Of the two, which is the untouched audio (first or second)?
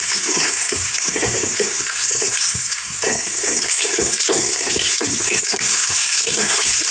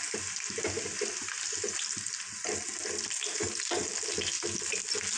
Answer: second